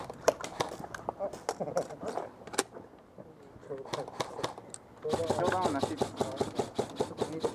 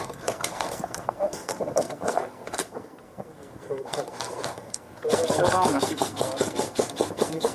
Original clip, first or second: first